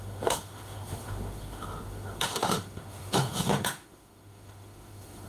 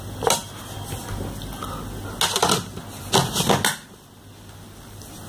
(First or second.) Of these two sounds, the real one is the second